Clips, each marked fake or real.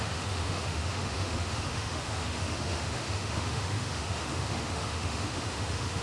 fake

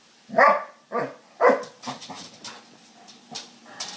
real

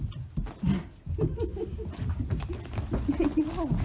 real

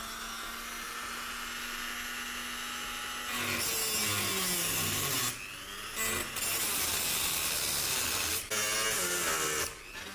real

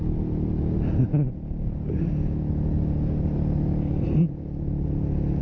real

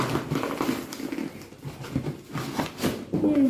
real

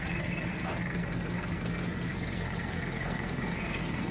fake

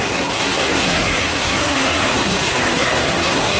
fake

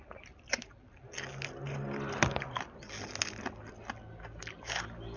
real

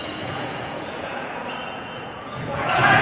fake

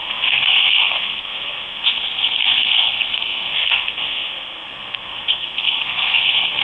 fake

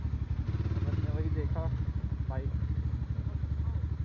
real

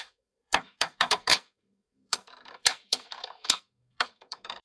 fake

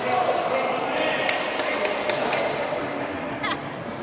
real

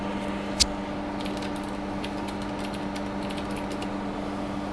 real